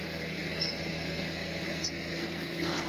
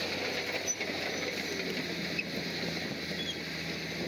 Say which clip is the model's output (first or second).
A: first